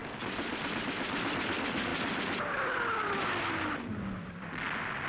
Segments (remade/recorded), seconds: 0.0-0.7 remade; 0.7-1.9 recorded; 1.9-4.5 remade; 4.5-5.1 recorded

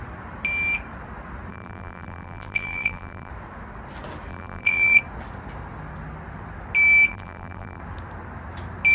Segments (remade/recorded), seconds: 0.0-1.5 recorded; 1.5-3.3 remade; 3.3-4.3 recorded; 4.3-5.0 remade; 5.0-7.1 recorded; 7.1-7.8 remade; 7.8-8.9 recorded

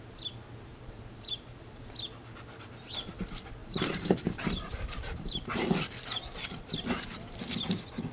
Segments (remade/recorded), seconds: 0.0-0.7 recorded; 0.7-1.8 remade; 1.8-3.6 recorded; 3.6-6.5 remade; 6.5-8.1 recorded

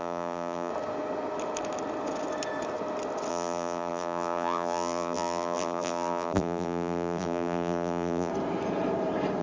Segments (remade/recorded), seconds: 0.0-0.7 remade; 0.7-3.3 recorded; 3.3-8.3 remade; 8.3-9.4 recorded

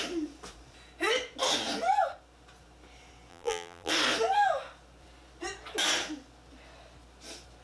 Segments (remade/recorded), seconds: 0.0-3.3 recorded; 3.3-3.9 remade; 3.9-7.6 recorded

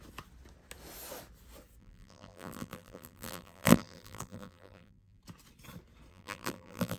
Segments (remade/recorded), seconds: 0.0-1.8 recorded; 1.8-5.2 remade; 5.2-6.1 recorded; 6.1-7.0 remade